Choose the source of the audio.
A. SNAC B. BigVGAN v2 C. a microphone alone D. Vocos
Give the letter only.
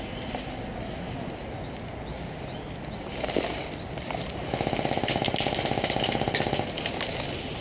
C